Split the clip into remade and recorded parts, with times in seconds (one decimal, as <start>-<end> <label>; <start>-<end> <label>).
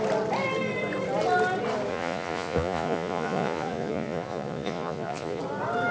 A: 0.0-1.9 recorded; 1.9-5.4 remade; 5.4-5.9 recorded